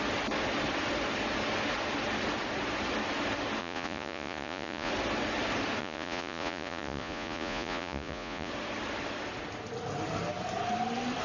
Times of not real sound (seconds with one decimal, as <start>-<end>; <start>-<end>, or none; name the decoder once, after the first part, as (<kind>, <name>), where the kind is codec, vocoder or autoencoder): 3.6-4.9 (vocoder, Vocos); 5.8-8.5